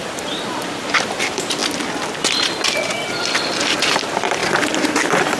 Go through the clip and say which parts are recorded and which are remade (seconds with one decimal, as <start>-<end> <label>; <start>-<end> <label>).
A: 0.0-1.6 remade; 1.6-3.8 recorded; 3.8-4.4 remade; 4.4-5.4 recorded